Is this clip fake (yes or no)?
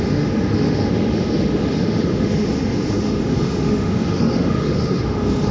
yes